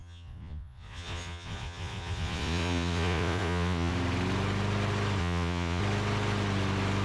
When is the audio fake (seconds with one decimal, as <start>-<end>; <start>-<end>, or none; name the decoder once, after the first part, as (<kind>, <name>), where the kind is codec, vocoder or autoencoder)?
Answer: 0.0-3.9 (vocoder, Vocos); 5.2-5.8